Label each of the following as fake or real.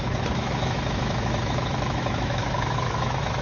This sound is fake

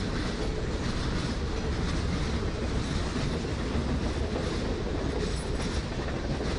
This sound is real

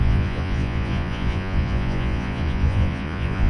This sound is fake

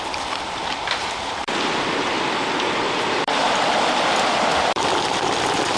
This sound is real